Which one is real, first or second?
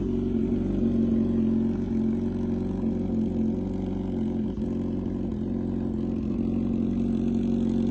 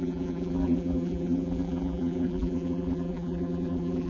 first